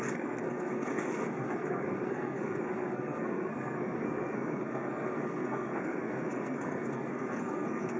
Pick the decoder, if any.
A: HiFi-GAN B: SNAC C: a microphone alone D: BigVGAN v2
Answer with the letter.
B